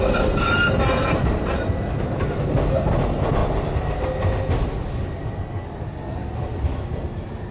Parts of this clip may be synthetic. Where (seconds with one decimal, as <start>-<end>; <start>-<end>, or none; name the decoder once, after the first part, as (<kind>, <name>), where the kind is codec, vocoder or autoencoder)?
none